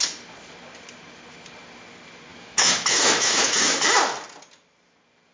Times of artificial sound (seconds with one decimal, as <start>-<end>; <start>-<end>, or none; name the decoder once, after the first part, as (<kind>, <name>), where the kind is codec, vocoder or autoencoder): 2.3-3.8 (autoencoder, DAC-VAE)